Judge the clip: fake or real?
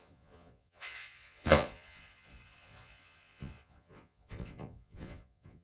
fake